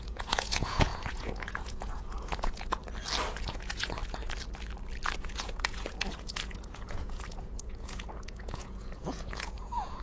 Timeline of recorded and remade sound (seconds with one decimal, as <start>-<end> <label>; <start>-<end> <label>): 0.0-2.8 remade; 2.8-3.5 recorded; 3.5-4.0 remade; 4.0-5.2 recorded; 5.2-10.0 remade